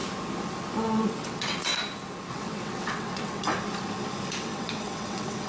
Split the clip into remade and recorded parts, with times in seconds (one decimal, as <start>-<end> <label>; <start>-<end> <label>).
0.0-1.1 recorded; 1.1-1.7 remade; 1.7-2.3 recorded; 2.3-3.5 remade; 3.5-4.3 recorded; 4.3-5.5 remade